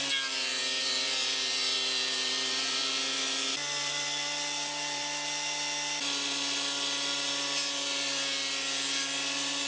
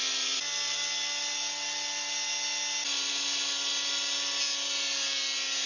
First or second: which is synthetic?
first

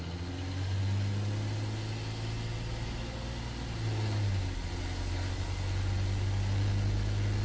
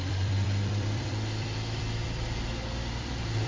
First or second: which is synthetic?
second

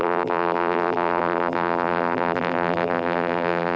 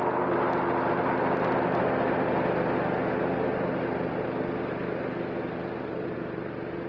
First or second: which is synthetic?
first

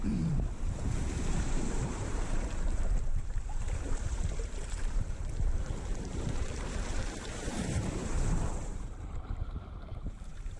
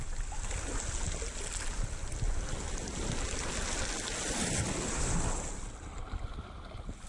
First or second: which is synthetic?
first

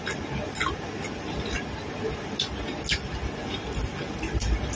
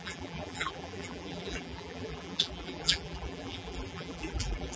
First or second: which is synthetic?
second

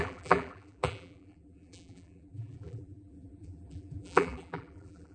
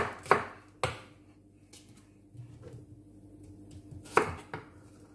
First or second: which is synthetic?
first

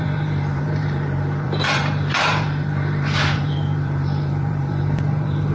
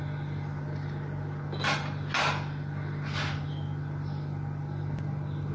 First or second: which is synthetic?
first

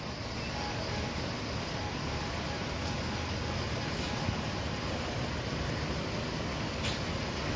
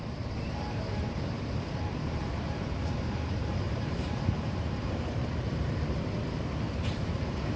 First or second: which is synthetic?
second